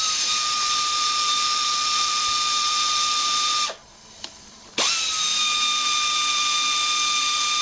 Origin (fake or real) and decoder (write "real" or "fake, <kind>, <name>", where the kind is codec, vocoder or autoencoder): fake, vocoder, BigVGAN v2